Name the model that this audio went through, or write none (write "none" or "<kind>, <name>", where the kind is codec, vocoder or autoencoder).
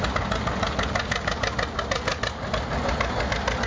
none